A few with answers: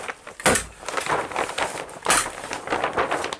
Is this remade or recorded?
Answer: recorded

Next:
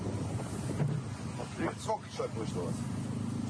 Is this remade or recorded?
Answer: recorded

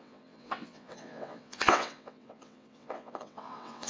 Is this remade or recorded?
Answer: remade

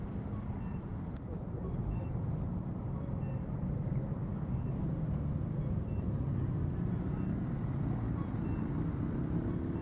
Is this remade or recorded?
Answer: recorded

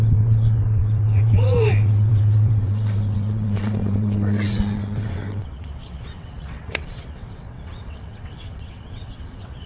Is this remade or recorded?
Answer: remade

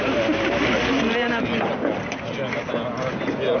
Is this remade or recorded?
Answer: recorded